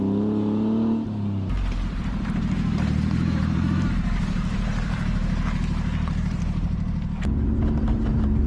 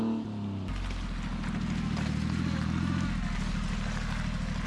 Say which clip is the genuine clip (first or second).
second